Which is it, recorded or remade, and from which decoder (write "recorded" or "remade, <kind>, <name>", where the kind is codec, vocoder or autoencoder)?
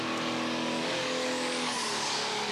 remade, codec, DAC